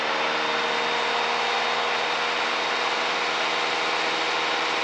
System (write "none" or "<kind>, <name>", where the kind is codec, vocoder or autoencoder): none